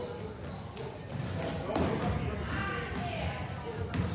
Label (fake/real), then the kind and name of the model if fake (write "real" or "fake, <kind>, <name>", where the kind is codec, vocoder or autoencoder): real